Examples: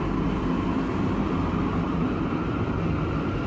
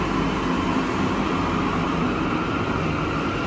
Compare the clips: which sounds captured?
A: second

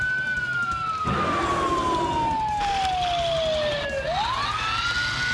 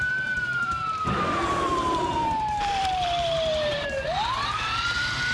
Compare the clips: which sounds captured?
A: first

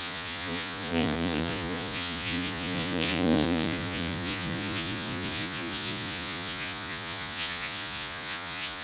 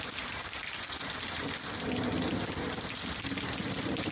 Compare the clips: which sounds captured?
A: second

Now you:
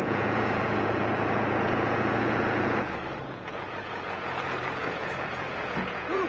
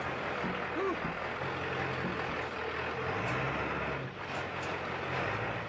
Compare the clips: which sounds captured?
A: second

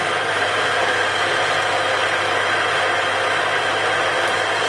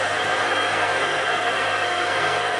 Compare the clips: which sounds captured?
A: first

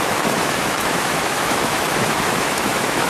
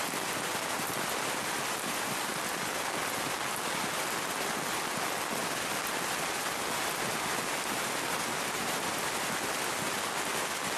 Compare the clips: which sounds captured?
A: second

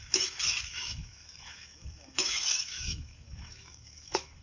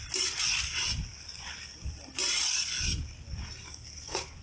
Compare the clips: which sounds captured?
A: second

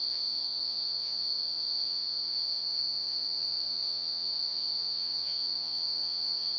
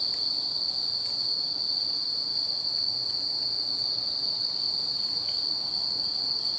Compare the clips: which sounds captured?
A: second